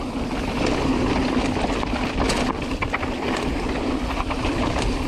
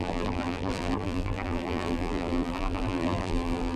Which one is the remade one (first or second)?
second